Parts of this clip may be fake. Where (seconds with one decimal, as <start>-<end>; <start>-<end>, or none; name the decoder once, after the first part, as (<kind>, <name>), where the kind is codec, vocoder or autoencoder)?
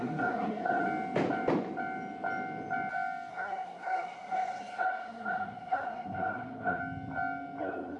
0.0-0.8 (codec, SNAC); 3.3-6.8; 7.6-8.0